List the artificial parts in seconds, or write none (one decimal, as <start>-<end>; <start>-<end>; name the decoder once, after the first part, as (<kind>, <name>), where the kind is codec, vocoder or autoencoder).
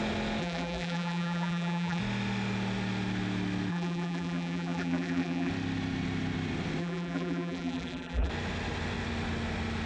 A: 0.4-2.0 (vocoder, BigVGAN v2); 3.7-5.5; 6.8-8.3